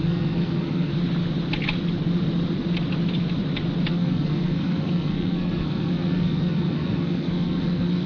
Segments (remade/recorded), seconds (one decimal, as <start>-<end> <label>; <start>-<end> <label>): 0.0-0.9 remade; 0.9-3.9 recorded; 3.9-8.1 remade